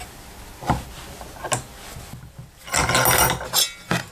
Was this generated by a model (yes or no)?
no